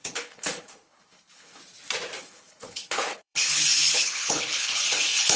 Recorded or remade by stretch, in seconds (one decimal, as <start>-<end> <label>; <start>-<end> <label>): 0.0-1.6 remade; 1.6-2.2 recorded; 2.2-5.4 remade

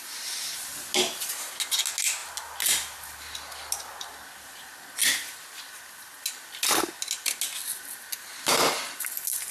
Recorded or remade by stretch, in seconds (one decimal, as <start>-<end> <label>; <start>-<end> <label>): 0.0-9.5 recorded